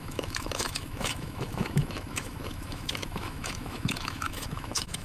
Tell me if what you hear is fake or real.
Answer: fake